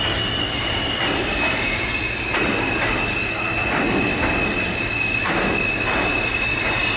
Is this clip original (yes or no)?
yes